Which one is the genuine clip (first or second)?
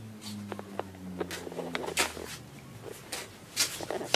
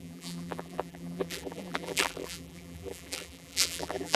first